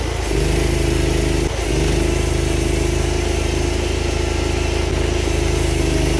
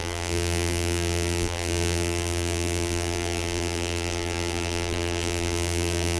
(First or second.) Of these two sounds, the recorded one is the first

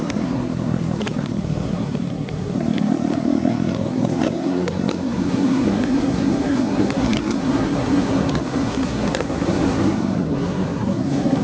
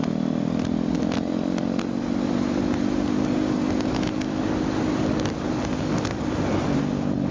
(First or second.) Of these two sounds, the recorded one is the second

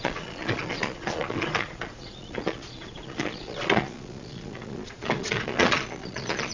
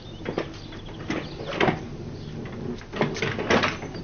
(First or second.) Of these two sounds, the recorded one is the second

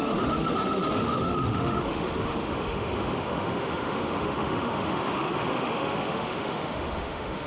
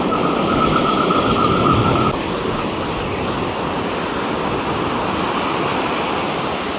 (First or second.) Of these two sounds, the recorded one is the second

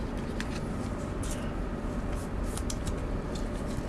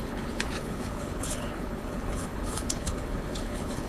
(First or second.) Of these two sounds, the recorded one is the first